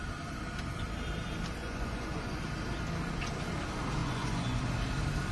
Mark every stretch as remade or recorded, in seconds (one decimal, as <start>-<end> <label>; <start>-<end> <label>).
0.0-1.6 recorded; 1.6-2.4 remade; 2.4-4.0 recorded; 4.0-4.6 remade; 4.6-5.3 recorded